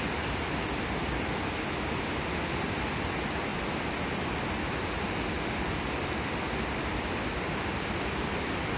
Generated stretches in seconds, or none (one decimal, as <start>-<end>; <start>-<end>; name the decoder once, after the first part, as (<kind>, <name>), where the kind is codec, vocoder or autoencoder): none